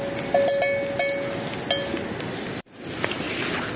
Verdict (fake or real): real